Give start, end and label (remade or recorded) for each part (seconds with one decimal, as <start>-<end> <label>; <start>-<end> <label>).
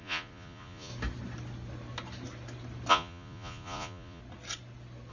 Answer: 0.0-0.9 remade; 0.9-2.9 recorded; 2.9-4.2 remade; 4.2-5.1 recorded